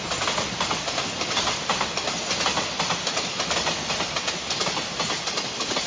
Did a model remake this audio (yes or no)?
no